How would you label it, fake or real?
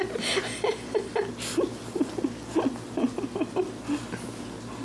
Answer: real